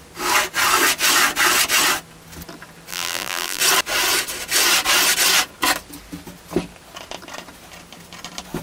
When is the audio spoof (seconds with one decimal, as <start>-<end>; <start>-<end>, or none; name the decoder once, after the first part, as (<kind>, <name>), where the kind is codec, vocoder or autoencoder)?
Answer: 2.9-3.6 (vocoder, BigVGAN v2)